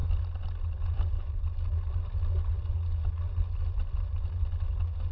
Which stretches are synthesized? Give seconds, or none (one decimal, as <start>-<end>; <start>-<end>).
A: none